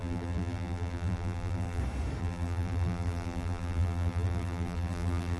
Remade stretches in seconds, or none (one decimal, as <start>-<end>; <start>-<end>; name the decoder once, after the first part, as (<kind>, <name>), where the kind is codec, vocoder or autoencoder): 0.0-1.8 (vocoder, BigVGAN v2); 2.2-5.4